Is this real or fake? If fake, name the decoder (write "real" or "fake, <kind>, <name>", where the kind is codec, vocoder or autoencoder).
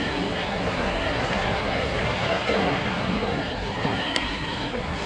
fake, codec, SNAC